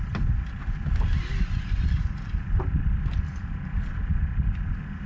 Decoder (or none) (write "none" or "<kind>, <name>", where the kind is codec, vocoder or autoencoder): none